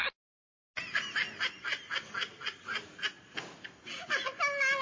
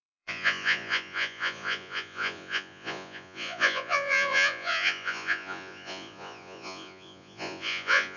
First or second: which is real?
first